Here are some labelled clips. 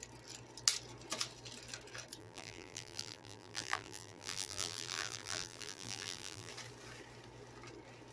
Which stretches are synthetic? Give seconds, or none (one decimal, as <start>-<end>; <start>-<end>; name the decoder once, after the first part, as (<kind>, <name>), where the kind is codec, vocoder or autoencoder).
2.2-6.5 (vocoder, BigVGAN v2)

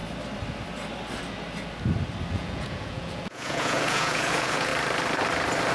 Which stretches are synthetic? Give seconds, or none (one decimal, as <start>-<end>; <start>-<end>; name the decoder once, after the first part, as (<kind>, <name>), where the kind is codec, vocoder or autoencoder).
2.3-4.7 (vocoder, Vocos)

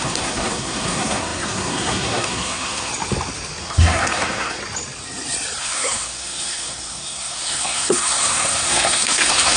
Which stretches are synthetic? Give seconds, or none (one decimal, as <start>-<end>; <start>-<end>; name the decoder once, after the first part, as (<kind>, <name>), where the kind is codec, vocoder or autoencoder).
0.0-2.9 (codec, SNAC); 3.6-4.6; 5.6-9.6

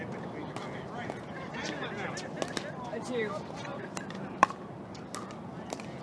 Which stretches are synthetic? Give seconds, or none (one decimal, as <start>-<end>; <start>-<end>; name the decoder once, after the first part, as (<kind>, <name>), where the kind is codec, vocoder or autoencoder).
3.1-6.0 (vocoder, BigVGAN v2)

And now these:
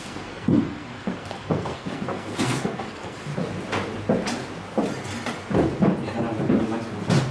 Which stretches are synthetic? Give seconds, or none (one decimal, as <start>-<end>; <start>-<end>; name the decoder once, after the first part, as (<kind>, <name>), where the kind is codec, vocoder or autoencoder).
0.0-3.3 (codec, SNAC)

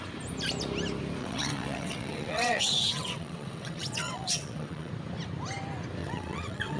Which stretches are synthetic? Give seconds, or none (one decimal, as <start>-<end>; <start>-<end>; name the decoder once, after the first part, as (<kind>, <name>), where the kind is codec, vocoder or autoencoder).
1.2-4.9 (vocoder, WaveNeXt); 6.0-6.8

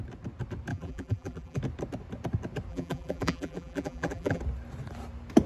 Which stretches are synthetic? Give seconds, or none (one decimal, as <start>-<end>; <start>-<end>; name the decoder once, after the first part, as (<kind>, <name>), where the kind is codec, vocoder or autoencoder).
0.7-1.6 (vocoder, BigVGAN v2); 2.7-4.4

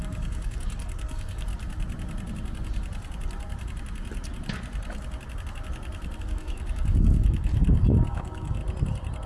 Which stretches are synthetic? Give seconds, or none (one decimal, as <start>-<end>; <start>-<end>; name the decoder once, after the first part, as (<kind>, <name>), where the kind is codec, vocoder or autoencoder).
0.0-1.5 (codec, DAC); 6.2-8.6